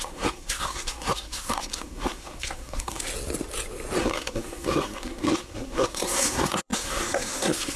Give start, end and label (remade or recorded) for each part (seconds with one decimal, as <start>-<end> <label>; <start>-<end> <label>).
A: 0.0-3.1 remade; 3.1-4.0 recorded; 4.0-7.8 remade